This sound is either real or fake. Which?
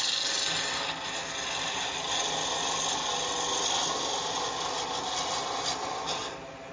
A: real